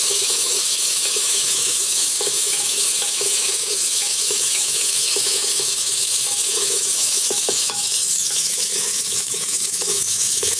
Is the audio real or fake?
fake